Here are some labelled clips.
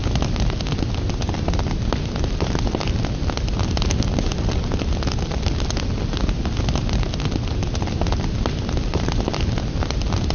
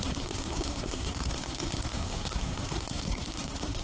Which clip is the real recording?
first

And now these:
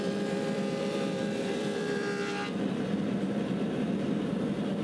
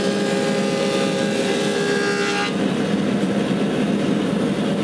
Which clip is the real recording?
second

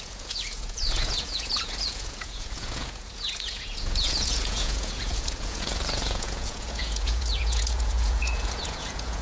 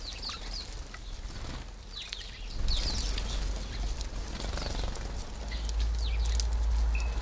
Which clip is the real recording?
second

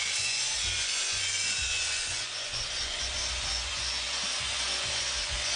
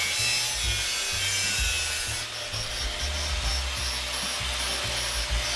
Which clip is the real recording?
second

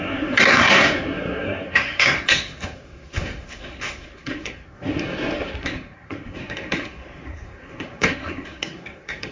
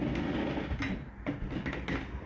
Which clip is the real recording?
second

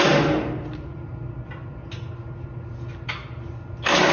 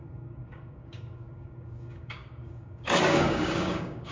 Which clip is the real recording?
first